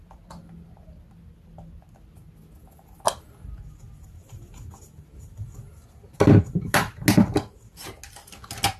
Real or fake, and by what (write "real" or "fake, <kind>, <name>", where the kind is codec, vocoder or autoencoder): real